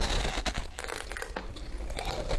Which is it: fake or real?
real